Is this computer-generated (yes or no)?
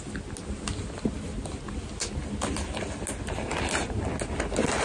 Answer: no